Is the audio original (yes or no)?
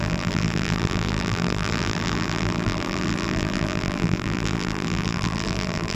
no